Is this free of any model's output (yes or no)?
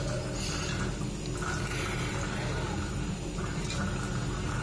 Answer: yes